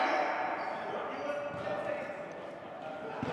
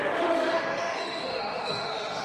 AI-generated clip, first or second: second